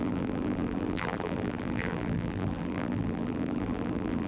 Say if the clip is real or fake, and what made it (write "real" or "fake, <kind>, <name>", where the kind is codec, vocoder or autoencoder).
fake, vocoder, BigVGAN v2